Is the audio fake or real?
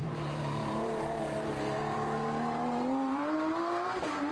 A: fake